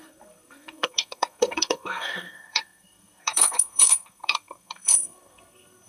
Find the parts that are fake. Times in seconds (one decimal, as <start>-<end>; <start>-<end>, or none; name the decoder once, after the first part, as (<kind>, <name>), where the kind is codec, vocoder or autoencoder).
0.0-5.9 (codec, SNAC)